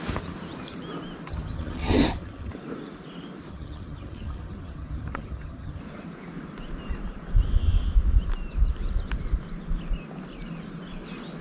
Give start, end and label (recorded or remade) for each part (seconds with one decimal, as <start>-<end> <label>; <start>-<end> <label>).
0.0-1.3 recorded; 1.3-2.5 remade; 2.5-3.5 recorded; 3.5-5.8 remade; 5.8-11.4 recorded